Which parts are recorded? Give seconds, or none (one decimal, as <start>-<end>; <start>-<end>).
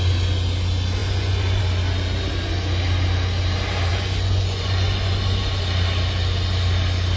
0.0-1.0; 1.6-3.9; 5.6-7.2